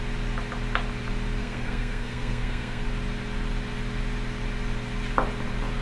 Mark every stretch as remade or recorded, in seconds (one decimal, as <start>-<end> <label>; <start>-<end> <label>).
0.0-1.4 recorded; 1.4-2.8 remade; 2.8-5.8 recorded